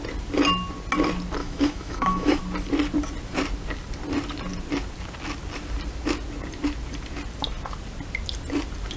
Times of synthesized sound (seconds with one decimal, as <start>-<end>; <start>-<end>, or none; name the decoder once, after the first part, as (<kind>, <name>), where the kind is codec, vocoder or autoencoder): 1.4-2.4 (autoencoder, DAC-VAE)